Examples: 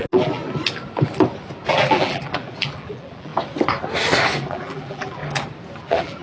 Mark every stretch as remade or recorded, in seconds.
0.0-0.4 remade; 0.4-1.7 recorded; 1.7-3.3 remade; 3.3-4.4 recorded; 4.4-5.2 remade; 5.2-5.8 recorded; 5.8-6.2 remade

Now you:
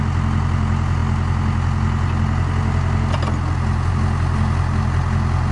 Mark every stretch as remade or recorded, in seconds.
0.0-5.5 recorded

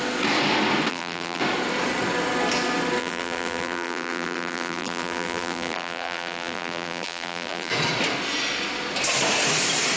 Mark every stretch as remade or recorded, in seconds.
0.0-0.9 recorded; 0.9-1.4 remade; 1.4-3.0 recorded; 3.0-7.7 remade; 7.7-10.0 recorded

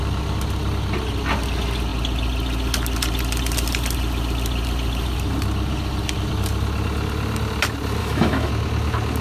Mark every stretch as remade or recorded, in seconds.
0.0-8.0 recorded; 8.0-8.5 remade; 8.5-9.2 recorded

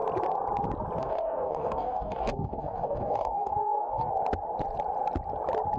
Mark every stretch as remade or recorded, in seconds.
0.0-1.0 recorded; 1.0-4.1 remade; 4.1-5.8 recorded

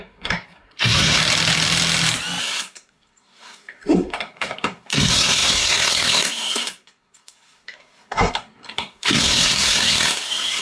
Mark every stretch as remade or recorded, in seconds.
0.0-1.2 remade; 1.2-2.4 recorded; 2.4-10.6 remade